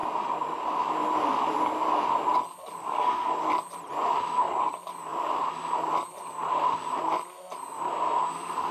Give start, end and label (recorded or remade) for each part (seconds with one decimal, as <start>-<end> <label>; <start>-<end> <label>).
0.0-2.8 recorded; 2.8-3.3 remade; 3.3-8.7 recorded